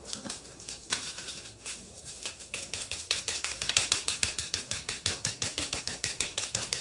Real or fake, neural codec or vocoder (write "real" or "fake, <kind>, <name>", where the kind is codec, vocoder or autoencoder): fake, codec, SNAC